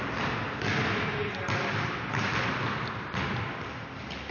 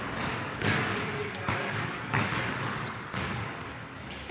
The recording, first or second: first